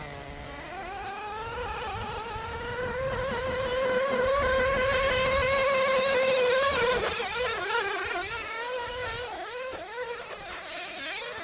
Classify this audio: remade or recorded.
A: recorded